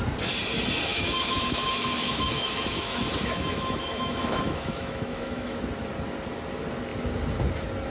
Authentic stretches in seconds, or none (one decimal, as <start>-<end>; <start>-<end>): 0.0-0.9; 5.6-7.9